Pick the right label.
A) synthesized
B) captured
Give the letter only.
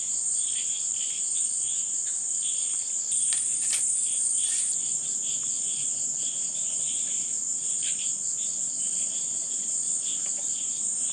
A